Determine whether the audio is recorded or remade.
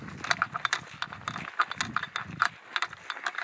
recorded